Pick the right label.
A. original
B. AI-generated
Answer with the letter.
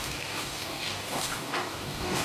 B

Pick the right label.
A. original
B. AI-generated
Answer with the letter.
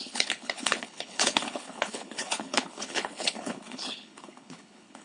B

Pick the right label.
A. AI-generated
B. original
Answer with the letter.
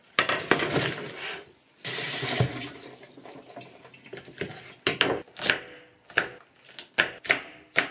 B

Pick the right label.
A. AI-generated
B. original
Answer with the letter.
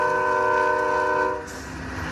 B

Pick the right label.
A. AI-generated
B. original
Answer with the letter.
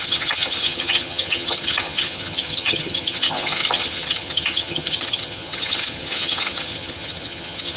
A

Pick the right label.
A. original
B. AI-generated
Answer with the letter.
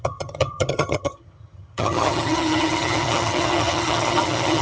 B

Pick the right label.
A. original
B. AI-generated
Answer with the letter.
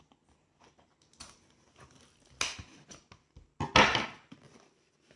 A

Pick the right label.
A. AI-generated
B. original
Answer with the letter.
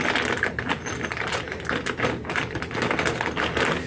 B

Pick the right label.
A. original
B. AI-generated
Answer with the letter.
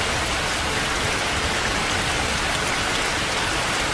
A